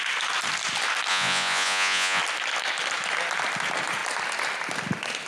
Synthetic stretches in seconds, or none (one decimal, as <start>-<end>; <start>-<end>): 1.1-2.2